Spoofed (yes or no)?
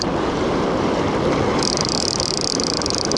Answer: no